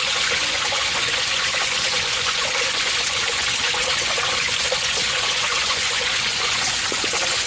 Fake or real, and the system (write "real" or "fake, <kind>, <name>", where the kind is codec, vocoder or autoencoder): fake, vocoder, Vocos